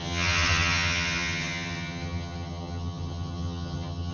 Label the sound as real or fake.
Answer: fake